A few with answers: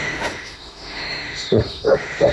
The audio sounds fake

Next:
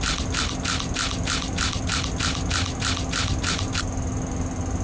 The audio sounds real